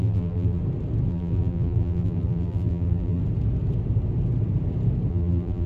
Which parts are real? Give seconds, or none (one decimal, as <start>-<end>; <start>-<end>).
0.6-1.1; 3.2-5.1